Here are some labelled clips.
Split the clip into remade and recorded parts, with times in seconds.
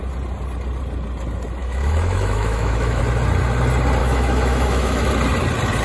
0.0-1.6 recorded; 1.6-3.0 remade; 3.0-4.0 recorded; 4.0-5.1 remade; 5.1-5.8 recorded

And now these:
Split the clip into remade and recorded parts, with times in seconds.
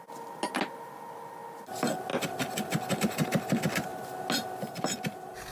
0.0-5.5 recorded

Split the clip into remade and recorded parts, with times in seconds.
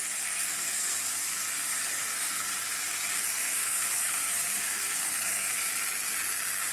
0.0-2.5 remade; 2.5-3.2 recorded; 3.2-5.7 remade; 5.7-6.7 recorded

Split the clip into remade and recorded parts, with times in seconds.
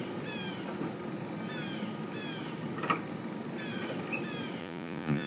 0.0-4.6 recorded; 4.6-5.3 remade